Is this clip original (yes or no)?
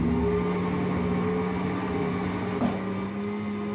yes